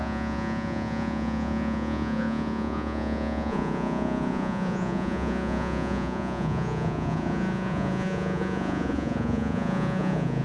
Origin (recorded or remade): remade